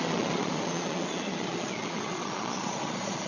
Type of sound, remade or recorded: remade